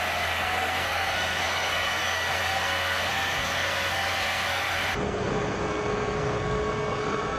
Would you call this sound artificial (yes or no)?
yes